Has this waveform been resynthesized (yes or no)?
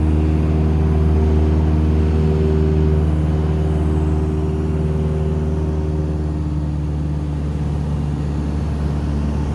no